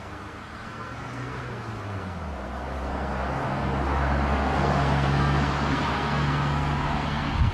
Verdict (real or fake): fake